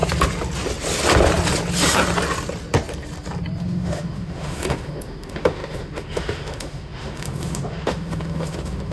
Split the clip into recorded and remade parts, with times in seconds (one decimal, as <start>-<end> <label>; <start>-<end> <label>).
0.0-3.6 recorded; 3.6-8.9 remade